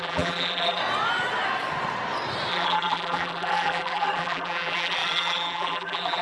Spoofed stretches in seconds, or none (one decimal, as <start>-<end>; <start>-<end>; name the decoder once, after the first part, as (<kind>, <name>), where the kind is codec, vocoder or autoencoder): 0.0-0.8 (vocoder, BigVGAN v2); 2.5-6.2